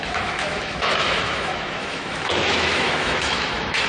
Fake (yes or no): yes